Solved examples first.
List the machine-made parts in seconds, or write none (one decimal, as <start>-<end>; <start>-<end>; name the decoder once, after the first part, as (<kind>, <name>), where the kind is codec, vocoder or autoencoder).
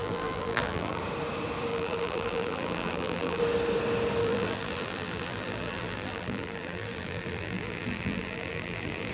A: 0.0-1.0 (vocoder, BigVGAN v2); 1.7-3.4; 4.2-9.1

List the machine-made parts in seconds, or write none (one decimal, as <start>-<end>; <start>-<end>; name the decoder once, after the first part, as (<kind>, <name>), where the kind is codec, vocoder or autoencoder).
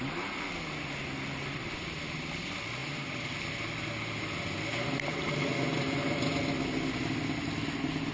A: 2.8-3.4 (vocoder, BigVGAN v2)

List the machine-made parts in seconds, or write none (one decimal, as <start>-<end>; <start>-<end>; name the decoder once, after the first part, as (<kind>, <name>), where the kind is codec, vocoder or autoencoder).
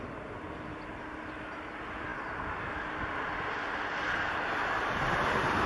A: none